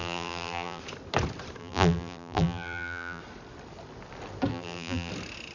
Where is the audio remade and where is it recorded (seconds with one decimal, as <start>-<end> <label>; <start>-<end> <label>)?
0.0-0.8 remade; 0.8-1.6 recorded; 1.6-3.2 remade; 3.2-4.5 recorded; 4.5-5.1 remade; 5.1-5.5 recorded